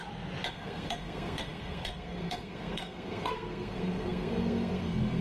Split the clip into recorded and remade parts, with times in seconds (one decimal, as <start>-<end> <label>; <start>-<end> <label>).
0.0-0.5 recorded; 0.5-5.2 remade